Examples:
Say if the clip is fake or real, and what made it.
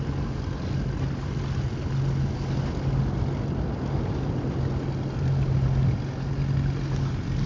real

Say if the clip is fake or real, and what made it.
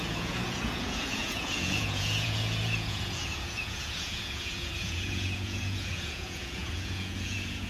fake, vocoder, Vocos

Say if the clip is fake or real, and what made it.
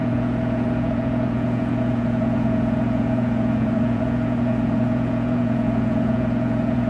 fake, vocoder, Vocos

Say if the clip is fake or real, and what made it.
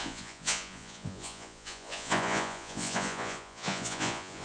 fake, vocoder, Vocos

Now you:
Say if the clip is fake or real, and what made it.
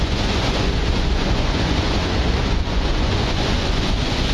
fake, vocoder, Vocos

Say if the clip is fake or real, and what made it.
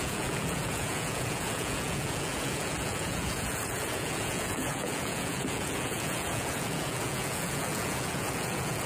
fake, vocoder, Vocos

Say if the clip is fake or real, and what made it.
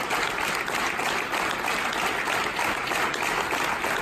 real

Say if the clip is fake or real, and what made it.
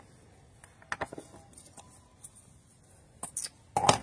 real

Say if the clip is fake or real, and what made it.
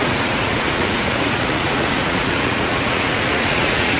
fake, vocoder, Vocos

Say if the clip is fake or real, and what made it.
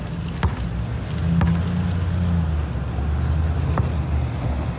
real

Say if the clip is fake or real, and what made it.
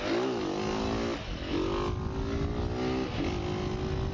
real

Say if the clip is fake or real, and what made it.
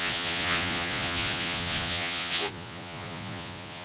fake, vocoder, Vocos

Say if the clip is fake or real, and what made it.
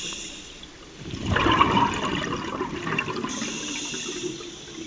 real